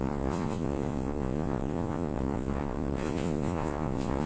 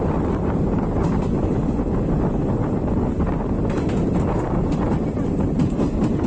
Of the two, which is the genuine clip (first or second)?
second